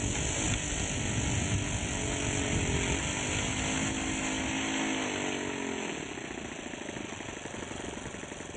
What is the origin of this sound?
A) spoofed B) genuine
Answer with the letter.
B